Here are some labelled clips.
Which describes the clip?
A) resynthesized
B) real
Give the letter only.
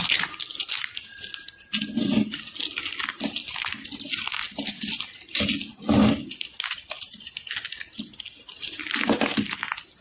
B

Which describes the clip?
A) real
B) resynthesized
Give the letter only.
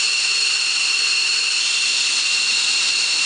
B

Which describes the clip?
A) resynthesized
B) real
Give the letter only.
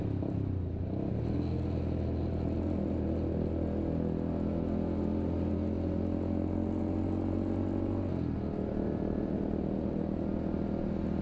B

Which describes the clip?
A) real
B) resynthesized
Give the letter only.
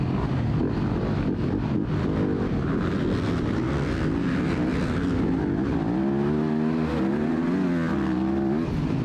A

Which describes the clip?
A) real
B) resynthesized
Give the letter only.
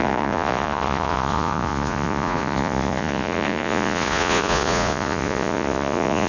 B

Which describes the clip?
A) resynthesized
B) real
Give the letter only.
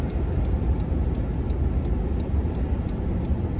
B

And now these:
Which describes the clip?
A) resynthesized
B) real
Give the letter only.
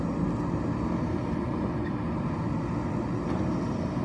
B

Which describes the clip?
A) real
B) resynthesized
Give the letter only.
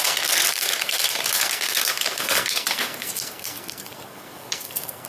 B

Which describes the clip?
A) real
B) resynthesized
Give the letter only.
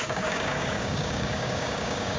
B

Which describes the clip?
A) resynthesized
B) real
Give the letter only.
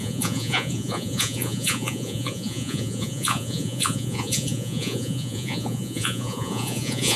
A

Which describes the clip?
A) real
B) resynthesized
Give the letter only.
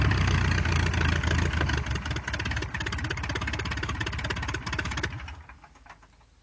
A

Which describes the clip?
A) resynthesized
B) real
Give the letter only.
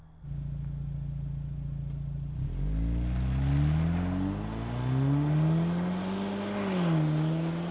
B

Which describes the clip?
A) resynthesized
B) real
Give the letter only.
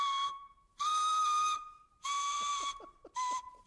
A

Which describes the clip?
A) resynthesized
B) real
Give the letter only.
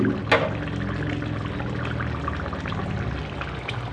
B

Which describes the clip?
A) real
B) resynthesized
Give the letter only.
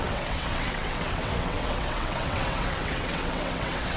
B